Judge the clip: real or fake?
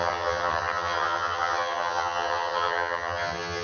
fake